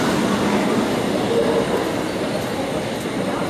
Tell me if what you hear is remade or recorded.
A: recorded